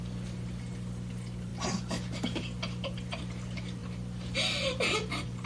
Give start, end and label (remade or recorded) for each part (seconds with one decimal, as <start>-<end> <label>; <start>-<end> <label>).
0.0-5.5 recorded